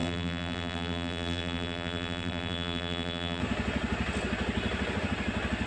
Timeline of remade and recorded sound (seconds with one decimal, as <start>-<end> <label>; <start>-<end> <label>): 0.0-3.4 remade; 3.4-5.7 recorded